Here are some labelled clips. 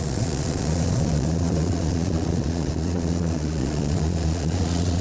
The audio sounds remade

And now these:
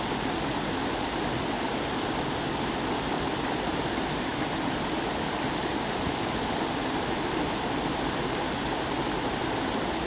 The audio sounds recorded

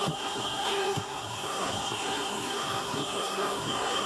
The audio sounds remade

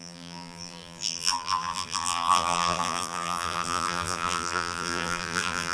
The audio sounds remade